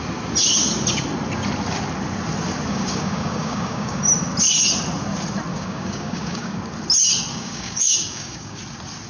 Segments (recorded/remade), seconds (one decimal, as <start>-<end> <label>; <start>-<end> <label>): 0.0-2.7 recorded; 2.7-4.0 remade; 4.0-5.5 recorded; 5.5-6.6 remade; 6.6-7.3 recorded; 7.3-8.6 remade; 8.6-9.1 recorded

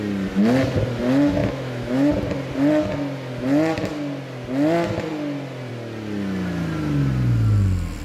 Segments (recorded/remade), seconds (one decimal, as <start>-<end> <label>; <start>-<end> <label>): 0.0-1.4 recorded; 1.4-2.1 remade; 2.1-8.0 recorded

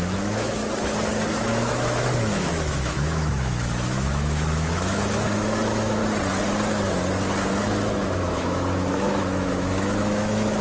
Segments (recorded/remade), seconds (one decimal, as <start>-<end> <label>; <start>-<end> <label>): 0.0-0.6 remade; 0.6-1.3 recorded; 1.3-6.0 remade; 6.0-7.6 recorded; 7.6-10.6 remade

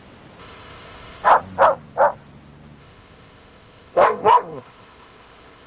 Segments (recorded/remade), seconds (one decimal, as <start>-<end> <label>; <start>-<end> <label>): 0.0-0.4 recorded; 0.4-1.3 remade; 1.3-2.8 recorded; 2.8-5.7 remade

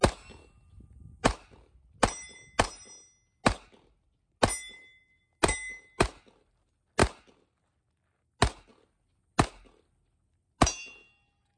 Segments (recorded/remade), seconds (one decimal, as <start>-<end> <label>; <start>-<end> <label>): 0.0-11.6 recorded

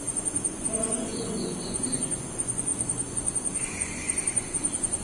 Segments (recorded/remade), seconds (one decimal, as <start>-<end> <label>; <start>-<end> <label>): 0.0-5.0 remade

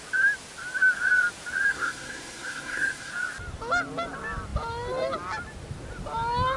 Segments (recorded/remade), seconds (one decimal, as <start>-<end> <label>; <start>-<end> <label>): 0.0-1.7 recorded; 1.7-3.1 remade; 3.1-6.6 recorded

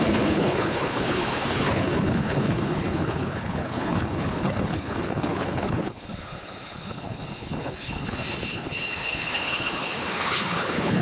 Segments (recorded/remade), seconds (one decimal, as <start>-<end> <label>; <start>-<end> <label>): 0.0-11.0 remade